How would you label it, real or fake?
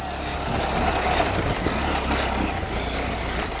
real